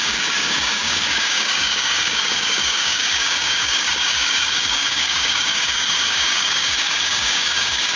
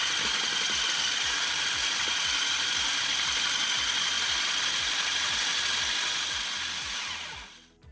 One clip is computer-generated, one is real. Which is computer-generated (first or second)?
first